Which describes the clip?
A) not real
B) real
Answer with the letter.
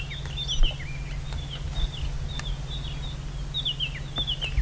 B